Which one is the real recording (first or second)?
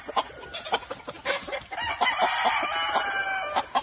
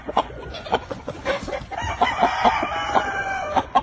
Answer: first